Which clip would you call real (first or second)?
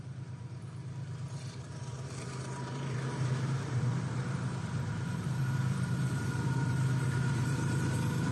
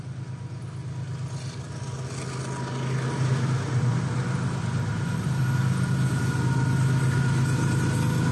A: second